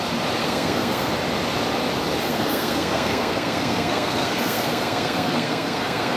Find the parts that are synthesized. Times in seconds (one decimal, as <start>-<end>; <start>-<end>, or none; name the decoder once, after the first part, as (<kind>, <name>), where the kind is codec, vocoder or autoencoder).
0.4-1.1 (codec, SNAC); 2.3-6.2